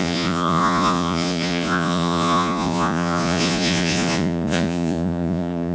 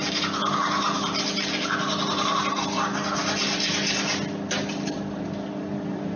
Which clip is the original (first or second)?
second